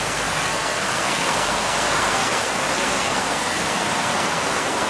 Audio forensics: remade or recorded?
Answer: remade